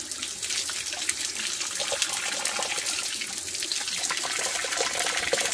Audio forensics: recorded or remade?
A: recorded